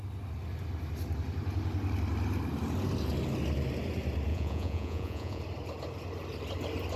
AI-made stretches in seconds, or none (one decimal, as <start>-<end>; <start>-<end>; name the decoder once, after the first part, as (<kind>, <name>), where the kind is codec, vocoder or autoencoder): 4.3-5.4 (vocoder, Vocos)